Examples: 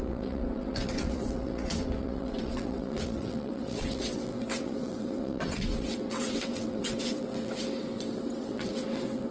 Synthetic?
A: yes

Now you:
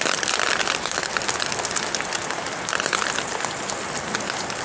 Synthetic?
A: no